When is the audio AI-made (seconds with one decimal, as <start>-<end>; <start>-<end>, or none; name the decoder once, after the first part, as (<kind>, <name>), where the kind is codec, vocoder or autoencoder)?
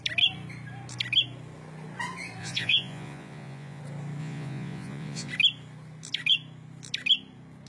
2.4-3.8 (vocoder, Vocos); 4.2-5.3